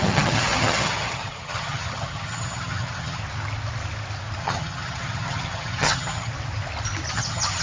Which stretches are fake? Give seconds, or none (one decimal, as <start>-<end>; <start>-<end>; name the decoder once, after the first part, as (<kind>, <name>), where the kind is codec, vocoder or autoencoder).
0.0-3.2 (vocoder, HiFi-GAN); 4.4-6.3; 7.1-7.6